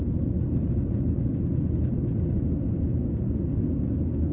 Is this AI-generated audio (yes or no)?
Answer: no